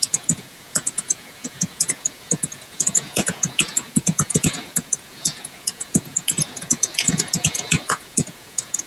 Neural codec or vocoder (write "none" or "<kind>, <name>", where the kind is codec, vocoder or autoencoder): vocoder, Vocos